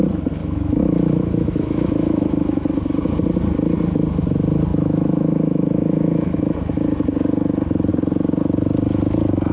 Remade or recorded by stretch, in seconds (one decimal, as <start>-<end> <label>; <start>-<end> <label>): 0.0-0.4 recorded; 0.4-2.7 remade; 2.7-4.7 recorded; 4.7-6.4 remade; 6.4-9.5 recorded